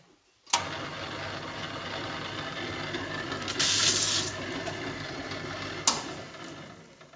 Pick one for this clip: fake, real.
real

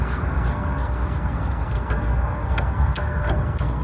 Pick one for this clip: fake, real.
fake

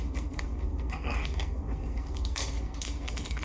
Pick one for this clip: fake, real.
fake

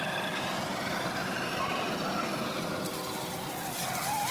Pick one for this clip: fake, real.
real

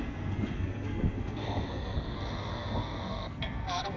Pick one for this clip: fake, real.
fake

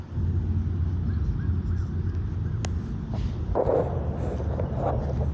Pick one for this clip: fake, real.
real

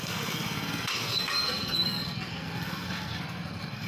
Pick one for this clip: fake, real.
fake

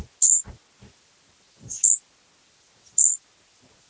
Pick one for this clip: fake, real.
real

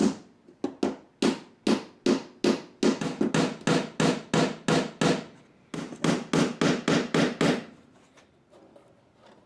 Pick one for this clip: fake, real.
real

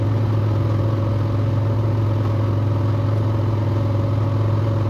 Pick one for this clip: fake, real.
real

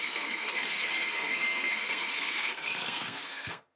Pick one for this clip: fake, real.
fake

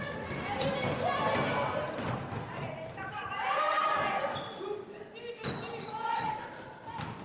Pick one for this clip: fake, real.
real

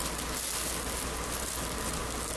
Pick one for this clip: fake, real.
real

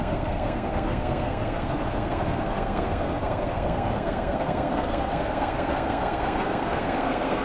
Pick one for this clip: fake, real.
fake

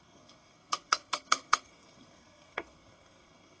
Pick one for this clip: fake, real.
fake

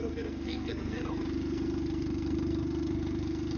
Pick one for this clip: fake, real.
fake